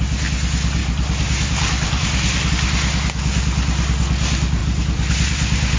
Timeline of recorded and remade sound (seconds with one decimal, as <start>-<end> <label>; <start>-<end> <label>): 0.0-0.8 recorded; 0.8-2.5 remade; 2.5-4.6 recorded; 4.6-5.8 remade